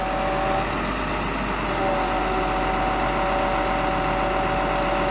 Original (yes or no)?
yes